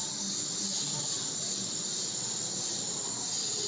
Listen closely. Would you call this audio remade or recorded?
recorded